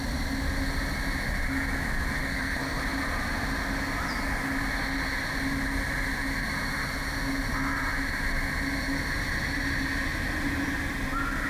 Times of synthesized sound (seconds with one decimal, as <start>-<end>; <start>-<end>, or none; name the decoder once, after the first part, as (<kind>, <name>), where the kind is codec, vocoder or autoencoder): 2.2-2.8 (codec, SNAC)

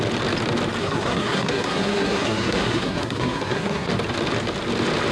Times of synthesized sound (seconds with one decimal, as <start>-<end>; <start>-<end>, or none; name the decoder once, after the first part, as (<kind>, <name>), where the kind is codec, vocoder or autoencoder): 0.8-3.9 (codec, SNAC)

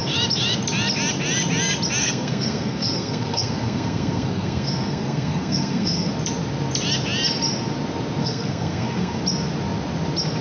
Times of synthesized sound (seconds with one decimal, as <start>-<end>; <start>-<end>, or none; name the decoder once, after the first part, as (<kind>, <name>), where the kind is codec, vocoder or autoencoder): 2.0-6.1 (codec, SNAC); 8.2-9.2

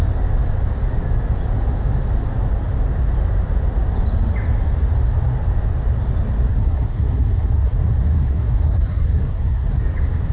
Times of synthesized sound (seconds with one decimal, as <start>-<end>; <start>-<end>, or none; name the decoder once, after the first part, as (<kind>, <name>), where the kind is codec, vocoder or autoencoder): 6.5-9.8 (codec, SNAC)

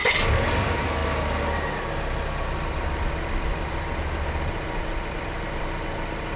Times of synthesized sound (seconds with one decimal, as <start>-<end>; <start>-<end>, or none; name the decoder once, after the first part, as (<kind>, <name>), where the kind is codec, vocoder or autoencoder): none

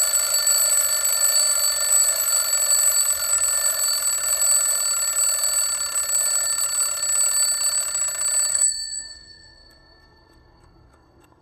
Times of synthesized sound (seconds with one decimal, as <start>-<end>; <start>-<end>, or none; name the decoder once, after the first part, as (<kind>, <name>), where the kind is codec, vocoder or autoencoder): 8.5-11.4 (codec, SNAC)

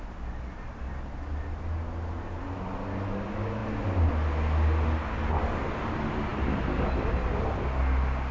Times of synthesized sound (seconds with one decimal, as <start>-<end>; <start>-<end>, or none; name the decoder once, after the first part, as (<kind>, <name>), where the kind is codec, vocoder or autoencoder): none